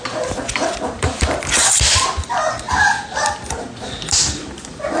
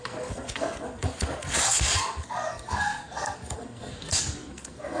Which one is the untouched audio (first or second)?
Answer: first